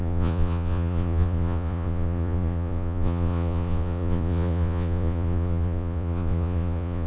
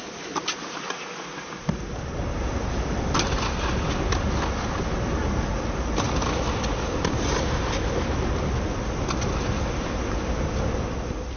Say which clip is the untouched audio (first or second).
second